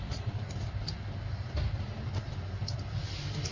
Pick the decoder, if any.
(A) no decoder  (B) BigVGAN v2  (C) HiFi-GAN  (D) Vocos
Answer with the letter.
A